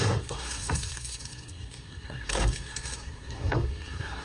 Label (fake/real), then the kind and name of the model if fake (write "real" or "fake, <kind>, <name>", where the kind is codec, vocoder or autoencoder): fake, codec, SNAC